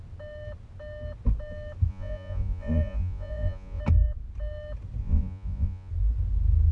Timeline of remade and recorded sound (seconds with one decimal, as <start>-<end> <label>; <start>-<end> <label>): 0.0-1.9 recorded; 1.9-3.8 remade; 3.8-5.0 recorded; 5.0-5.9 remade; 5.9-6.7 recorded